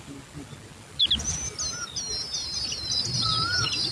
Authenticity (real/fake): real